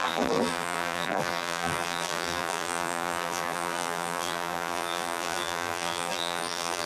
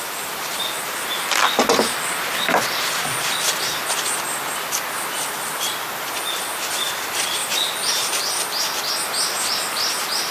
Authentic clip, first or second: second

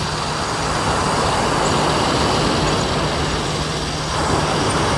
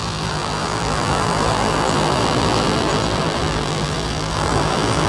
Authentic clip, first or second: first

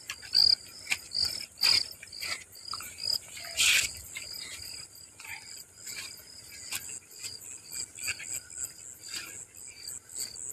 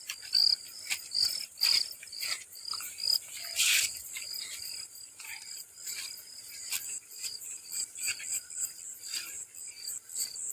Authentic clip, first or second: first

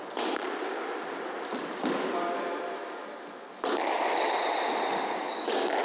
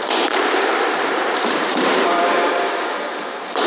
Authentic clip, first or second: first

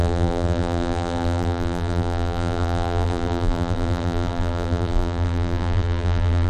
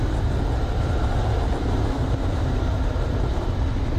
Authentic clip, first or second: second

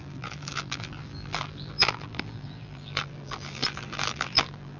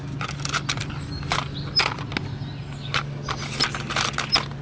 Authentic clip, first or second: second